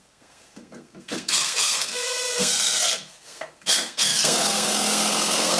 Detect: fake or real fake